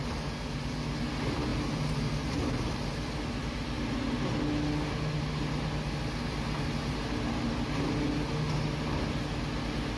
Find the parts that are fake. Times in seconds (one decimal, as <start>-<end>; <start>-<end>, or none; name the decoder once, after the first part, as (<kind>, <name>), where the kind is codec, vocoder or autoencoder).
1.5-3.1 (vocoder, BigVGAN v2)